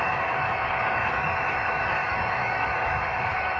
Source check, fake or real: fake